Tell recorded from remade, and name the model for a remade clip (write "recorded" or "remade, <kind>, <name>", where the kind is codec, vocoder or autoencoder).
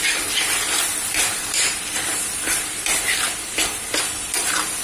remade, vocoder, BigVGAN v2